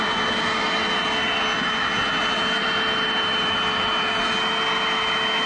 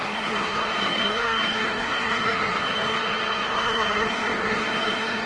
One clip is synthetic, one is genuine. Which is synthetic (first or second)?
second